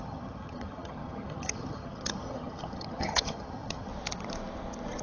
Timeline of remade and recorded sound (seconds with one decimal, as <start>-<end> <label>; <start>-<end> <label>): 0.0-3.9 remade; 3.9-5.0 recorded